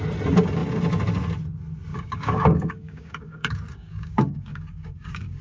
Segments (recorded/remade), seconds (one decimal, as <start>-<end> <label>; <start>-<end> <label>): 0.0-1.9 recorded; 1.9-5.4 remade